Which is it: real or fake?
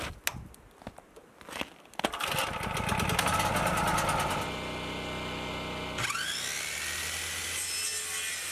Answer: real